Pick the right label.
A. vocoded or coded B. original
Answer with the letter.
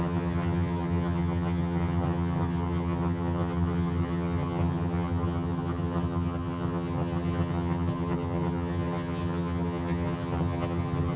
A